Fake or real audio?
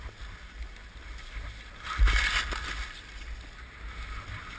real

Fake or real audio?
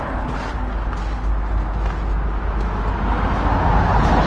real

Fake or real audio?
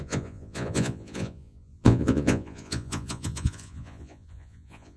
fake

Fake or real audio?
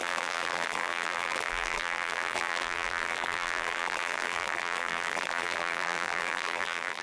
fake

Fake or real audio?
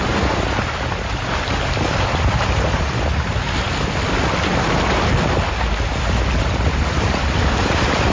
real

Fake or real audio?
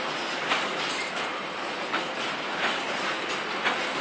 real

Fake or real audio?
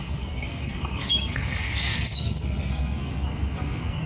fake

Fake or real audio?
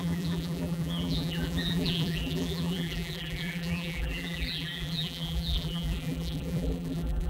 fake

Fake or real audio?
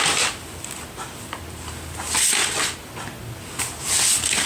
real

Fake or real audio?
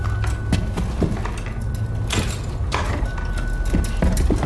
real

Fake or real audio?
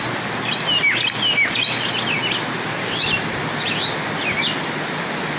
real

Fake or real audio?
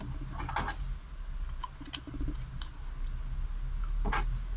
real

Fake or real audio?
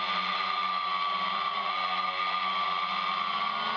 real